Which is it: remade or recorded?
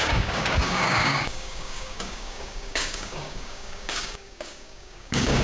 remade